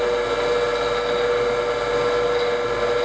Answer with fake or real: real